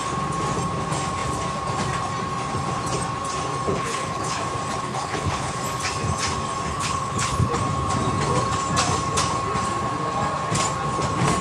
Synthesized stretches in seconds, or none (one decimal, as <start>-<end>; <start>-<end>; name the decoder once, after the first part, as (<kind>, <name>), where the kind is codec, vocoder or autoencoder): 3.7-4.4 (codec, HILCodec); 4.9-5.6; 6.7-7.6